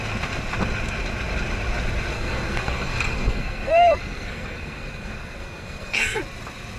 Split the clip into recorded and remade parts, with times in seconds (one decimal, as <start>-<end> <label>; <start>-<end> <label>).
0.0-2.1 recorded; 2.1-6.2 remade; 6.2-6.8 recorded